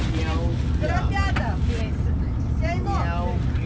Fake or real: real